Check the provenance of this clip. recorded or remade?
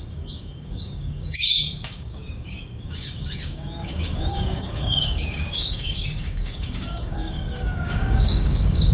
remade